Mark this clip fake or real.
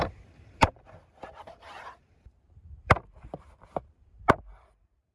fake